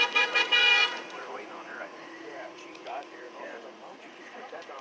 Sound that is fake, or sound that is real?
fake